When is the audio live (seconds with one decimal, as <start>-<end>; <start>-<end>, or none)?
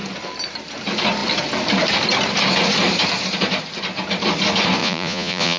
0.0-4.8